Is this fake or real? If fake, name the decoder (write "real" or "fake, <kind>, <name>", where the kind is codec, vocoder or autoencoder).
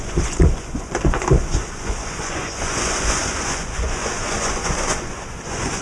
fake, vocoder, Vocos